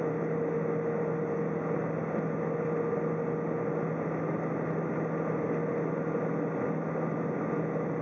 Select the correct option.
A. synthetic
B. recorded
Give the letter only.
B